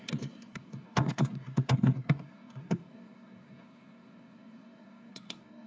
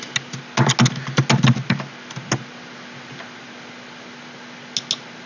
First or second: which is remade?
first